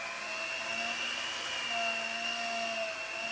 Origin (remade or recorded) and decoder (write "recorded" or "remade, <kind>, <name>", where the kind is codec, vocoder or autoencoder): recorded